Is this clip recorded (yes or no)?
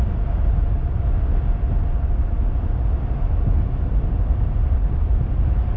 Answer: yes